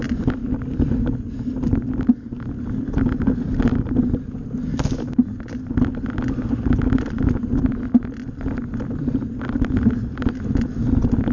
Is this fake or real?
real